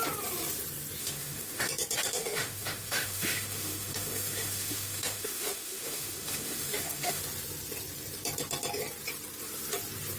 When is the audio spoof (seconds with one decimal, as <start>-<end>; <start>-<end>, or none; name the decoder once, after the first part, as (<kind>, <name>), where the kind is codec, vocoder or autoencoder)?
1.0-1.7 (autoencoder, DAC-VAE); 2.1-7.2